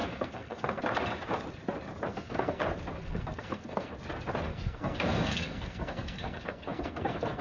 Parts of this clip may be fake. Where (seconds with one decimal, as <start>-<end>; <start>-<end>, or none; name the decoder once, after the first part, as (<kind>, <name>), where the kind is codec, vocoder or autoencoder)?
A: 0.0-0.8 (codec, SNAC); 2.1-2.6; 3.0-3.9; 4.5-7.4